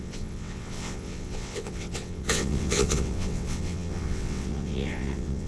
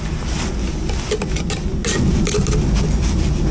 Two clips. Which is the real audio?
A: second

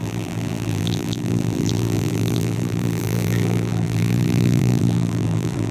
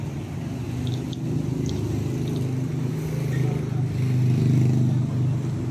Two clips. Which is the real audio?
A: second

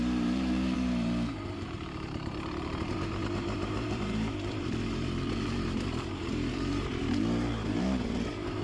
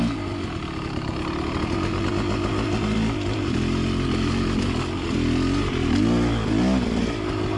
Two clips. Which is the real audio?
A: second